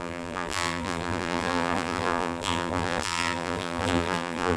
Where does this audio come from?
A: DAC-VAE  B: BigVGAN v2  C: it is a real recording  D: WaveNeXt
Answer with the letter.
B